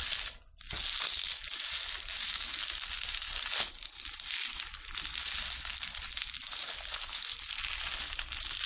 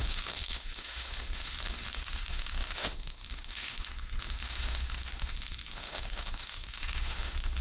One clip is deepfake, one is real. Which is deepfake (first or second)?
second